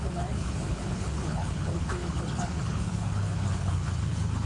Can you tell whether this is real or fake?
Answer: fake